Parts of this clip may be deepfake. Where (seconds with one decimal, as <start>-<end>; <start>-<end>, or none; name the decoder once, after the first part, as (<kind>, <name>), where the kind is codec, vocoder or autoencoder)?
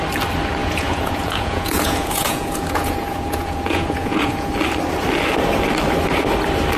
0.6-4.5 (vocoder, Vocos)